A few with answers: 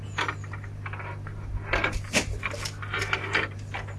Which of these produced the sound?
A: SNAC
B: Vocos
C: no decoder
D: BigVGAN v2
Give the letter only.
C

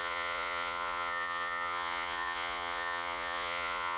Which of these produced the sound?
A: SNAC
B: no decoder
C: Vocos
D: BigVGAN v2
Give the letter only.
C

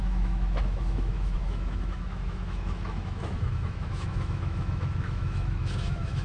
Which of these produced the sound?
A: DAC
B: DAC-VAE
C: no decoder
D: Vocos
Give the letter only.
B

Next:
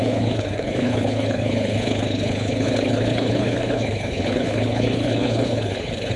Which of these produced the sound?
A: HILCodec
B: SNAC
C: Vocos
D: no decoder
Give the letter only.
A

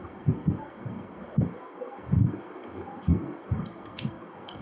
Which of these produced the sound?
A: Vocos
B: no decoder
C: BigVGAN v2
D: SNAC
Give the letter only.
D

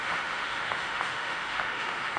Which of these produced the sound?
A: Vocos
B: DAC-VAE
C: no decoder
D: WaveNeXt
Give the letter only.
B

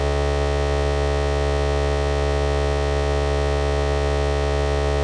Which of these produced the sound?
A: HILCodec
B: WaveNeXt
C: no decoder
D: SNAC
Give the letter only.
C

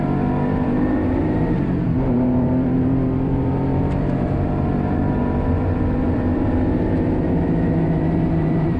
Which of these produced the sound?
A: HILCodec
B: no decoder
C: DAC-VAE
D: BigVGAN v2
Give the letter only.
D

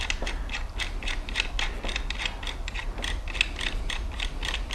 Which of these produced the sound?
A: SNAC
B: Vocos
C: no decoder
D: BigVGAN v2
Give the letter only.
C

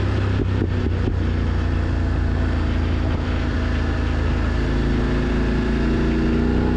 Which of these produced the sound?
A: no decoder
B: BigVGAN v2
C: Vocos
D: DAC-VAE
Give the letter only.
A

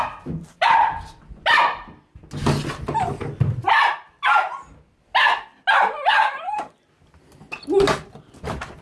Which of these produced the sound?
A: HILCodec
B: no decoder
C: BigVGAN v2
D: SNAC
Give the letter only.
B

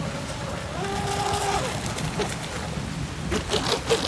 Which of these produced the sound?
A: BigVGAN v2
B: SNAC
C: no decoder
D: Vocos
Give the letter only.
C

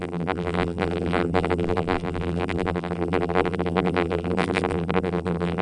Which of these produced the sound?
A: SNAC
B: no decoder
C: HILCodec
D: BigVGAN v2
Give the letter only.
D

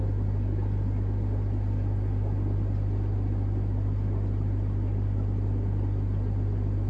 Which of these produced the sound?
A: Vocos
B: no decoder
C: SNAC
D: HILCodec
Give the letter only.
B